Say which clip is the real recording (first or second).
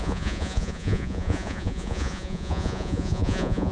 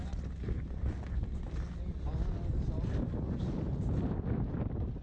second